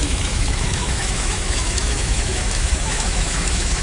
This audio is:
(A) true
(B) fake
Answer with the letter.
B